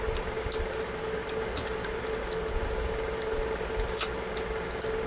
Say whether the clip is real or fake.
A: real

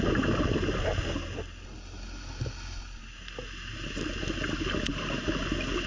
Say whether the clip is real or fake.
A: real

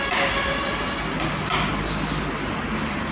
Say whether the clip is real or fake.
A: real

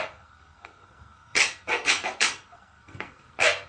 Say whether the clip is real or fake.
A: fake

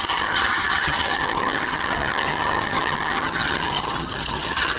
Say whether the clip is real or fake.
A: fake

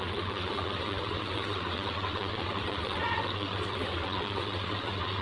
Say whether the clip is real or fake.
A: fake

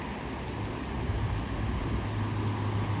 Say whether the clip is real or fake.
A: real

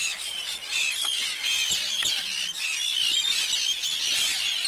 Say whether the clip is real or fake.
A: real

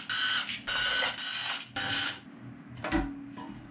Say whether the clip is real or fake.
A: real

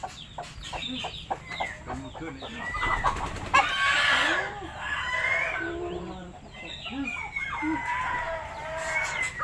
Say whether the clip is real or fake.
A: real